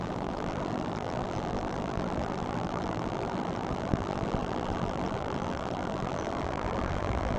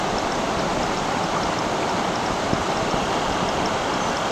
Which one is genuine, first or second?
second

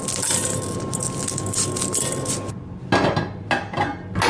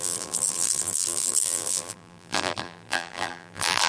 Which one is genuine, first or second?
first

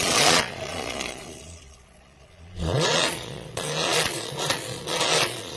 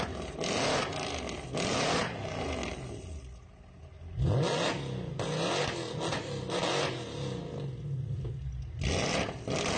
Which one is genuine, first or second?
second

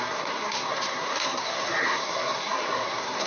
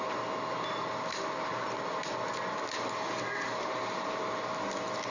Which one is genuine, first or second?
second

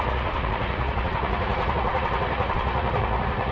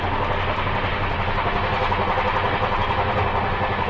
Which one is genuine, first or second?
second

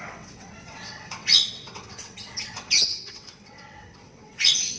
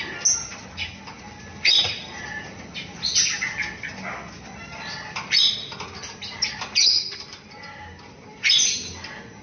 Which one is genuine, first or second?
second